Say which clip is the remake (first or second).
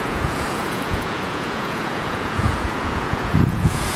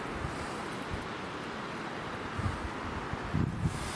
first